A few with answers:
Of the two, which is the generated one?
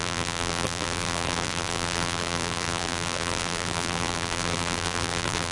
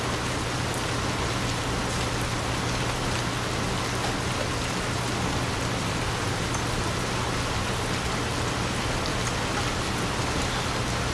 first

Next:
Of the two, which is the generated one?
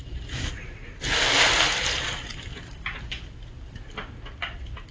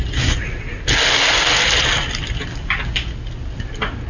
first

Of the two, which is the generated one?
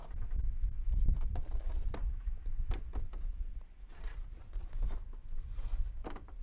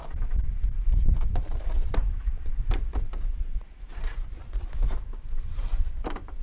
second